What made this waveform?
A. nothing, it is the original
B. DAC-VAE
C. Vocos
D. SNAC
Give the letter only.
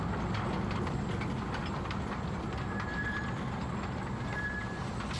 A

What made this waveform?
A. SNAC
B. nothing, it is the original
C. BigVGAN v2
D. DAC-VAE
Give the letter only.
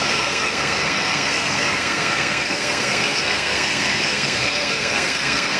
A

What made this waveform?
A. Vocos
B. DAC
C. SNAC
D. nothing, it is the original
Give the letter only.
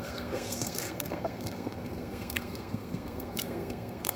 C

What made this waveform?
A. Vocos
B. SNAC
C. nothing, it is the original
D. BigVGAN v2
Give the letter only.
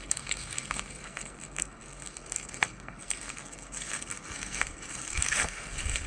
B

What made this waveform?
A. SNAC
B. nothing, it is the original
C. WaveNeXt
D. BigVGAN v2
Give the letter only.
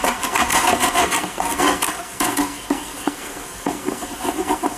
A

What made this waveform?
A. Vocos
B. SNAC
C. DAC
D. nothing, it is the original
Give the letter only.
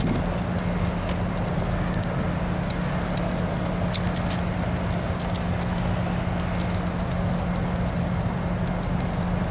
D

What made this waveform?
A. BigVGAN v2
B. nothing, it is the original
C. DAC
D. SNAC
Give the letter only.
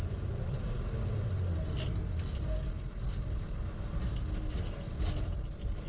B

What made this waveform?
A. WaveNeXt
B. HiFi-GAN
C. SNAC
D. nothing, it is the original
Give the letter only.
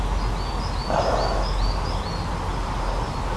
D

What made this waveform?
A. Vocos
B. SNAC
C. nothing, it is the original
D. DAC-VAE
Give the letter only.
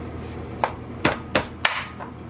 C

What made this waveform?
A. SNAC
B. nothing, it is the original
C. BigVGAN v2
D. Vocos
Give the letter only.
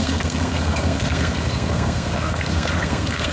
A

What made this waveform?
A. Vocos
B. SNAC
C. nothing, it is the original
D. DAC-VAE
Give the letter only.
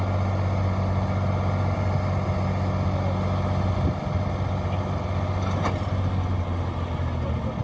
C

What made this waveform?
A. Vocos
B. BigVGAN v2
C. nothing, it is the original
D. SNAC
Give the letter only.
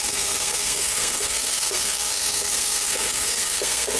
D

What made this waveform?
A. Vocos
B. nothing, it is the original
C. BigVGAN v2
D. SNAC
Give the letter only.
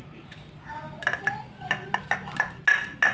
B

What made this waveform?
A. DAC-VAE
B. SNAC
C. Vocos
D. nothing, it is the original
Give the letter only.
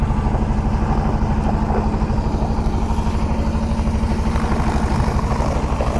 D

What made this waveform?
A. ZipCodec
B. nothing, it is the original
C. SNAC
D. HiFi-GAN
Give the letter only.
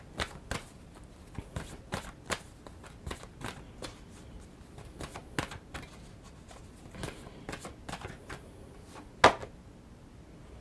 B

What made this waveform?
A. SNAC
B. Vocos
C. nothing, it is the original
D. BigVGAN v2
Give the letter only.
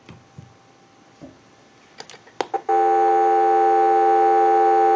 C